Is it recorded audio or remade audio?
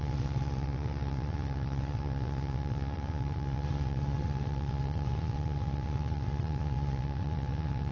remade